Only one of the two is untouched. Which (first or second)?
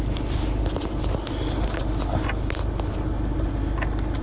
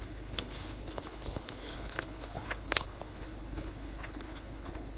first